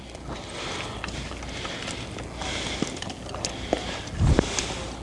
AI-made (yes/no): no